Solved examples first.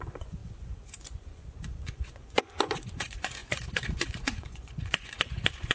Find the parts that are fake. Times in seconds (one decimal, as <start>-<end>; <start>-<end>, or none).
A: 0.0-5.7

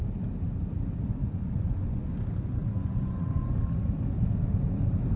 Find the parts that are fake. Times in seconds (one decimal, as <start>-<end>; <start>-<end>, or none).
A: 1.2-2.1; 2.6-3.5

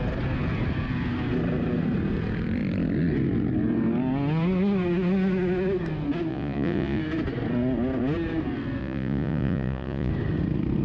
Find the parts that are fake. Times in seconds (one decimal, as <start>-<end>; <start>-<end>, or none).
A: 6.3-7.0; 8.8-10.1